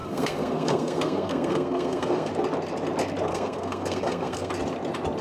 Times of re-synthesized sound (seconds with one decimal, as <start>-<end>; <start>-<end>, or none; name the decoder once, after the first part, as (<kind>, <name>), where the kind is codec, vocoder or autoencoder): 0.0-2.3 (codec, SNAC); 3.3-4.5